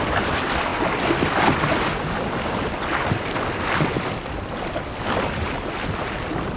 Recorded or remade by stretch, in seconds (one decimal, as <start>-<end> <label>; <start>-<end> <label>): 0.0-6.6 recorded